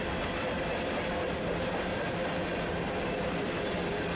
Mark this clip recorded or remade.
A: recorded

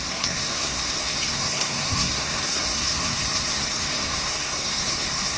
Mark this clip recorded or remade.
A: remade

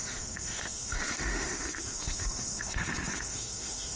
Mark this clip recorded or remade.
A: remade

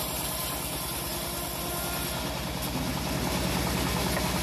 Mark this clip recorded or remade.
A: recorded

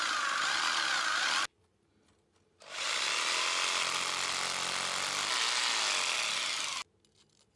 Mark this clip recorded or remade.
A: recorded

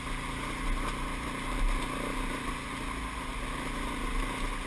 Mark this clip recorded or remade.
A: recorded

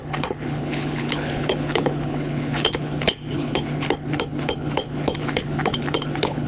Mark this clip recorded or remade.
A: remade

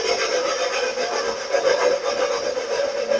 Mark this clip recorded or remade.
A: recorded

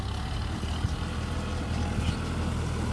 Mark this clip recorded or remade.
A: recorded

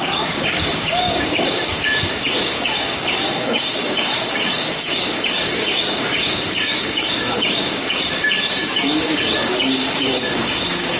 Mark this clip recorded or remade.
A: remade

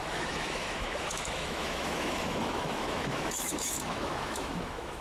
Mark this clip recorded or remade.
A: remade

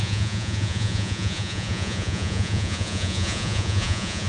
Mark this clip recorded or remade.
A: remade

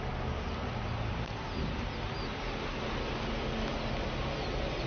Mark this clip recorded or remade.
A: recorded